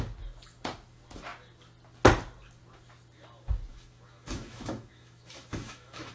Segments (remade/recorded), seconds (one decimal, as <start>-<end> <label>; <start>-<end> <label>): 0.0-3.7 recorded; 3.7-6.1 remade